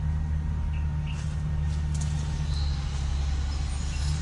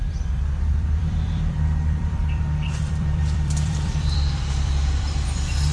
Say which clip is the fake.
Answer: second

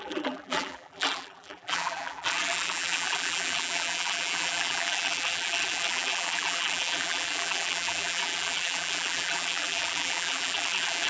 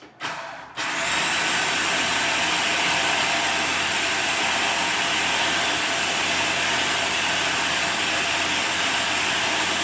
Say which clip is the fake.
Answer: first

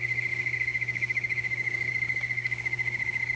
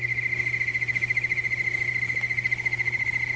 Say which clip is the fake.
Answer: first